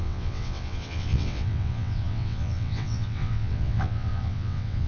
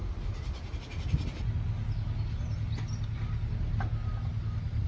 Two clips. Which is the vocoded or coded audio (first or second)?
first